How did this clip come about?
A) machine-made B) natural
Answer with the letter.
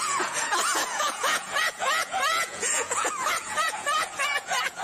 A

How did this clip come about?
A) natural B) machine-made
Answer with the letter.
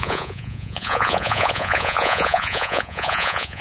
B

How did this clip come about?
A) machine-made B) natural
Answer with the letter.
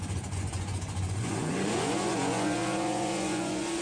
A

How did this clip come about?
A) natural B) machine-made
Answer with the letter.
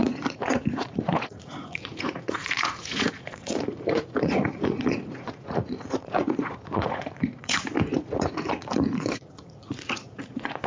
B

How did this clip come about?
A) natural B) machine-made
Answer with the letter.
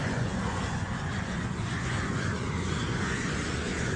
B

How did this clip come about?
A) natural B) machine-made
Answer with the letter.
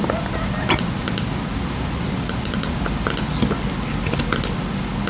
A